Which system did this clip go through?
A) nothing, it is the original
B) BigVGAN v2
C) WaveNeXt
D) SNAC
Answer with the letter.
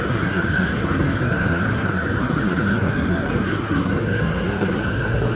D